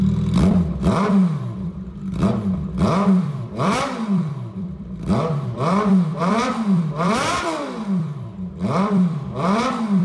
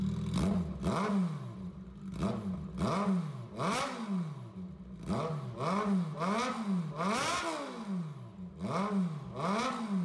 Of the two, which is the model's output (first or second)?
first